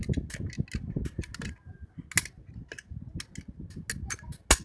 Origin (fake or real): real